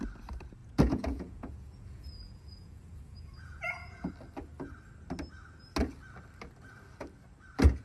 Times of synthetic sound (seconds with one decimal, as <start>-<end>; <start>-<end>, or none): 0.6-4.1